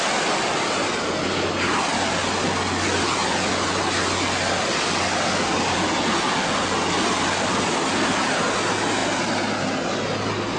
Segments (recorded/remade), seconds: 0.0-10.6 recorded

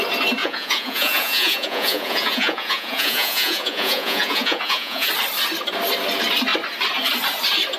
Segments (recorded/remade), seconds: 0.0-0.4 recorded; 0.4-5.1 remade; 5.1-7.8 recorded

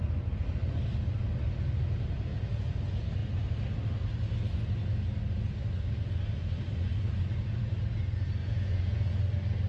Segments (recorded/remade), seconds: 0.0-2.3 recorded; 2.3-2.8 remade; 2.8-8.4 recorded; 8.4-9.2 remade; 9.2-9.7 recorded

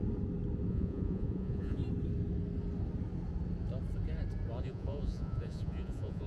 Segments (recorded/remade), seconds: 0.0-0.7 recorded; 0.7-1.8 remade; 1.8-4.6 recorded; 4.6-6.3 remade

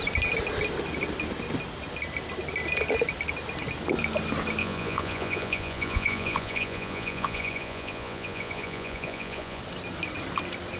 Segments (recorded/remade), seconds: 0.0-4.6 recorded; 4.6-9.6 remade; 9.6-10.8 recorded

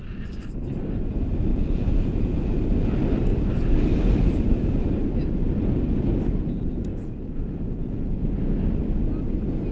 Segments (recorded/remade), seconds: 0.0-1.5 recorded; 1.5-2.5 remade; 2.5-6.9 recorded; 6.9-8.3 remade; 8.3-9.7 recorded